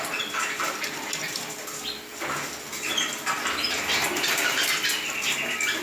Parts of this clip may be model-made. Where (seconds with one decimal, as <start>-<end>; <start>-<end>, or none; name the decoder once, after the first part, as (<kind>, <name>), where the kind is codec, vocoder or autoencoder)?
4.0-4.7 (vocoder, BigVGAN v2)

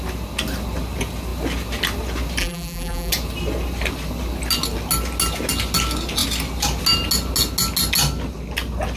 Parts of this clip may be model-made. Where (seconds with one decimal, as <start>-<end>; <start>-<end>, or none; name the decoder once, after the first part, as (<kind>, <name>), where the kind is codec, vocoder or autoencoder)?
2.4-3.1 (vocoder, BigVGAN v2)

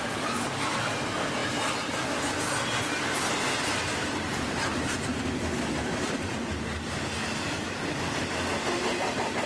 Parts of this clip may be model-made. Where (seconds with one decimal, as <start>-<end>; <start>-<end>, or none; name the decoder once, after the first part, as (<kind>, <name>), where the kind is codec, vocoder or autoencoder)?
none

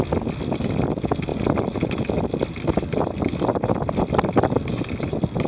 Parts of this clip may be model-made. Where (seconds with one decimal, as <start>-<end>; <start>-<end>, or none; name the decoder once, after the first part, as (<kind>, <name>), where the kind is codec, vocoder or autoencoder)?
none

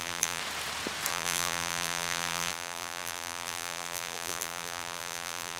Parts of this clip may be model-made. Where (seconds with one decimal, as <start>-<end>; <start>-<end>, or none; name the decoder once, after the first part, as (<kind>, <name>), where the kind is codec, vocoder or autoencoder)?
0.0-0.4 (vocoder, BigVGAN v2); 1.1-5.6

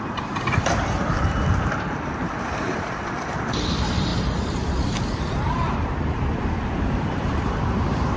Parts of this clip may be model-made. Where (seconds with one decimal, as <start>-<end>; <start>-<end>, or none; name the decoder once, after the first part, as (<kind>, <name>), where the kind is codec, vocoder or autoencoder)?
0.0-8.2 (vocoder, BigVGAN v2)

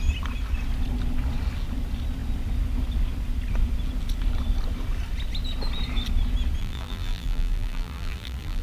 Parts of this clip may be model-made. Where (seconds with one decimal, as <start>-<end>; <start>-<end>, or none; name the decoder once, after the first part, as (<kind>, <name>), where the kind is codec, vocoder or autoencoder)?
6.6-8.6 (vocoder, BigVGAN v2)